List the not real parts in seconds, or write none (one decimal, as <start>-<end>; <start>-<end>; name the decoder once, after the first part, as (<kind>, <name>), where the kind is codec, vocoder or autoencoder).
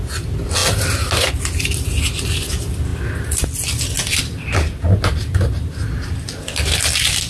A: none